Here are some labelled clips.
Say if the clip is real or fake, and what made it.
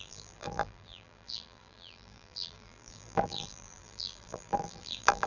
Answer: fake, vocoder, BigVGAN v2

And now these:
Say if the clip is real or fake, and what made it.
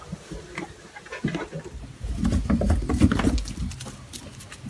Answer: real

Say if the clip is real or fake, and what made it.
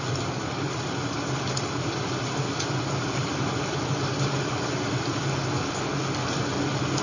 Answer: real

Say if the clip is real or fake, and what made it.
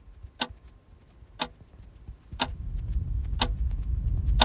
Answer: real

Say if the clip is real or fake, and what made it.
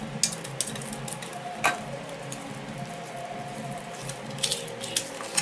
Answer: real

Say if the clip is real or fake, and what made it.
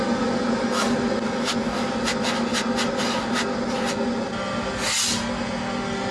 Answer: real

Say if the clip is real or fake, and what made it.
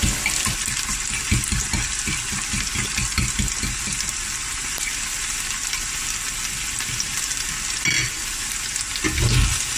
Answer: real